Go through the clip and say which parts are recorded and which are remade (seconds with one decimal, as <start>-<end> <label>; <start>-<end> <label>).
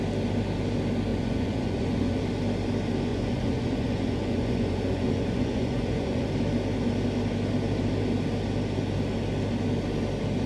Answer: 0.0-1.1 recorded; 1.1-2.2 remade; 2.2-3.1 recorded; 3.1-6.3 remade; 6.3-10.5 recorded